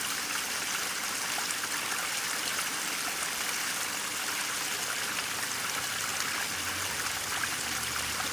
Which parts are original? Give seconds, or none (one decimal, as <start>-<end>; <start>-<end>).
0.0-8.3